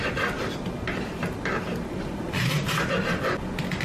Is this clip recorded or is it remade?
recorded